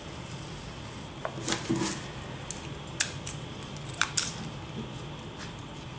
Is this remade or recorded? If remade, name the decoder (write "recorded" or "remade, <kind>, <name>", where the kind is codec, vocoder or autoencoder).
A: recorded